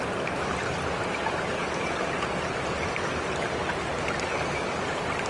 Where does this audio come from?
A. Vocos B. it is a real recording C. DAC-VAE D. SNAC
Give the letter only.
B